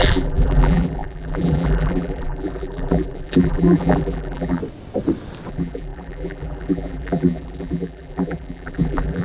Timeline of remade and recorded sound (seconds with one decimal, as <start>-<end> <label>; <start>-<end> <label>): 0.0-4.6 remade; 4.6-5.5 recorded; 5.5-9.2 remade